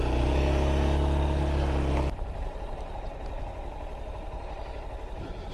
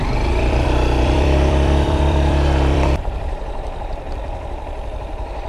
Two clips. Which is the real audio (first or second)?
first